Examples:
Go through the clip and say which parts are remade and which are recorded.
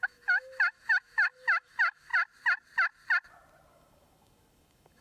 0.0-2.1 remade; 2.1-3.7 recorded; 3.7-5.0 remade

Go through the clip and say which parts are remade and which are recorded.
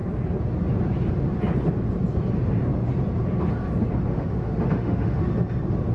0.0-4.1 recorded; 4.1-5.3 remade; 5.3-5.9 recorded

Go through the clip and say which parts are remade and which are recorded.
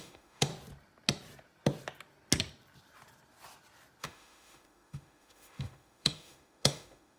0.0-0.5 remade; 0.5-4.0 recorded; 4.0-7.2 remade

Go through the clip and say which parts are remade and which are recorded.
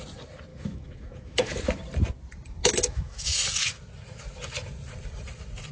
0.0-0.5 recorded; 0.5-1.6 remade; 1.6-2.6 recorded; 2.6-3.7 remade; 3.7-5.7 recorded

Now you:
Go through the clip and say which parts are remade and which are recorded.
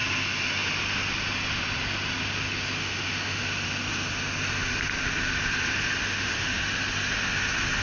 0.0-2.8 recorded; 2.8-3.4 remade; 3.4-6.0 recorded; 6.0-6.6 remade; 6.6-7.8 recorded